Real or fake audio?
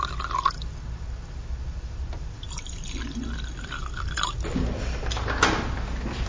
real